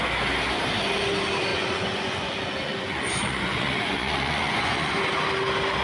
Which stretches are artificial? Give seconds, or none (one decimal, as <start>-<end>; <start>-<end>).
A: 1.5-5.0